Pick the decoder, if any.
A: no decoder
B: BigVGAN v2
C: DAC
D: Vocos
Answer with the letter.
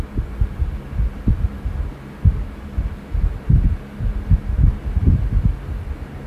A